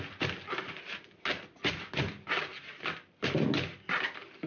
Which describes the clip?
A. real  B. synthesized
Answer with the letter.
A